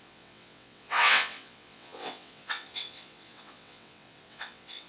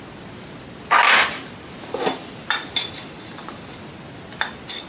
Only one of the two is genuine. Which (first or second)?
second